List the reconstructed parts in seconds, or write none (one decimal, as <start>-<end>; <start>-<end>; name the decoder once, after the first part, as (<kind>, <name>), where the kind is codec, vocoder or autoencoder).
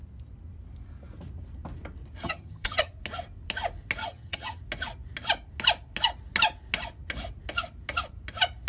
2.2-2.9 (vocoder, HiFi-GAN); 4.0-4.6